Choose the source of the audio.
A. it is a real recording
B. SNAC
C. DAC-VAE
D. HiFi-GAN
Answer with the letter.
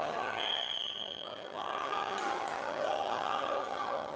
D